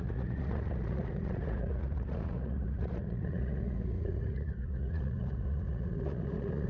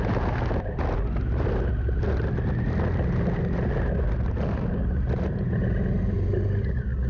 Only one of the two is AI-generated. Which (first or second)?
first